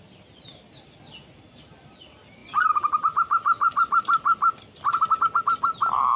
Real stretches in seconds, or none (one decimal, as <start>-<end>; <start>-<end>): 0.0-6.2